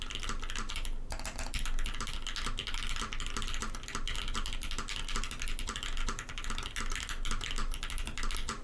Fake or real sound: real